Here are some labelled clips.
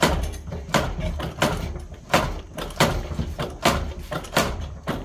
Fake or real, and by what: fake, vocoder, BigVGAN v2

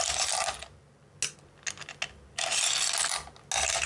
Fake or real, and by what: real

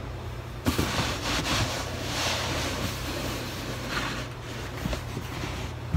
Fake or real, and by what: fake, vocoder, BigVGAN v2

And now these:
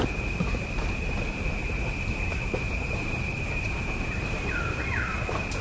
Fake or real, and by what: fake, vocoder, BigVGAN v2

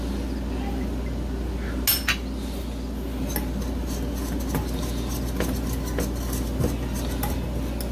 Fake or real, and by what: real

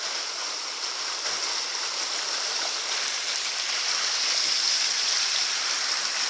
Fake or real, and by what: real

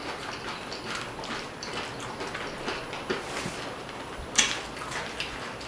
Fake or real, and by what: real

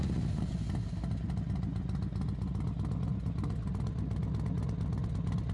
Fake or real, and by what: real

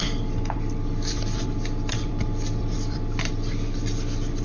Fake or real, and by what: fake, vocoder, BigVGAN v2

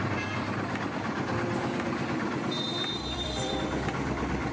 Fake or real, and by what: fake, vocoder, BigVGAN v2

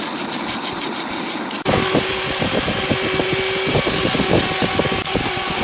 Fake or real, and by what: real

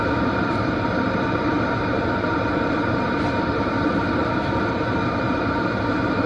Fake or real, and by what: fake, vocoder, BigVGAN v2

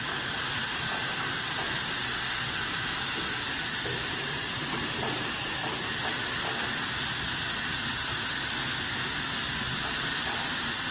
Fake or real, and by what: real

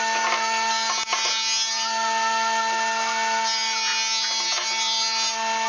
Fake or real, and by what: real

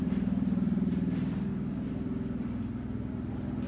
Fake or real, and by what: fake, vocoder, BigVGAN v2